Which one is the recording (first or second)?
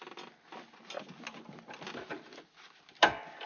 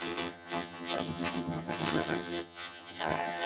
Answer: first